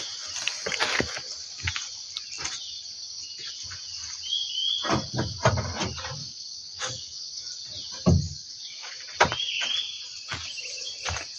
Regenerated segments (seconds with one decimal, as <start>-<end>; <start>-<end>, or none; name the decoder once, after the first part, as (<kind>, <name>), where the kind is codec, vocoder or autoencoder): 6.2-7.5 (codec, DAC); 8.4-9.0